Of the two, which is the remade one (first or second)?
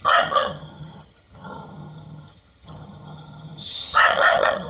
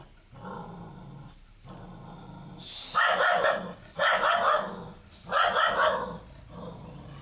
first